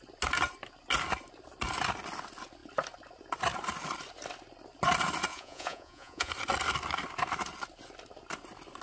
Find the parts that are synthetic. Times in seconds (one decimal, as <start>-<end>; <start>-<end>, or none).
5.3-6.3